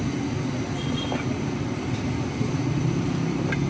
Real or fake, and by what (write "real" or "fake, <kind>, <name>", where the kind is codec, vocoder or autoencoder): real